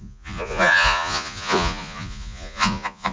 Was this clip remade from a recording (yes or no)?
yes